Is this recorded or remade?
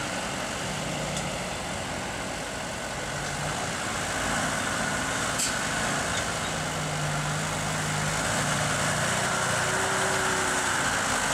recorded